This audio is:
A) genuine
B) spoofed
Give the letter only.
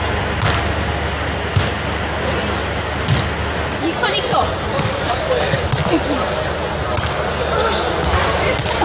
A